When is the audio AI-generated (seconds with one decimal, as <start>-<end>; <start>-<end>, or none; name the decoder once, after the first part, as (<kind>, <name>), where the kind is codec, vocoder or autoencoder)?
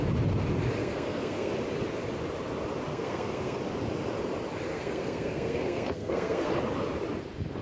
0.8-1.5 (codec, SNAC); 2.9-3.6; 4.7-6.5